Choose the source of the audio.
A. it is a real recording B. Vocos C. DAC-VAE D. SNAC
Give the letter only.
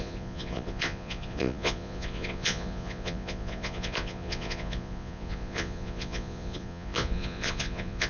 B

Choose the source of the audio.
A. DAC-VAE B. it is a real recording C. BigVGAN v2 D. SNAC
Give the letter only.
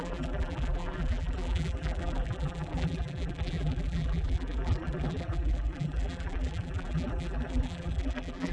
C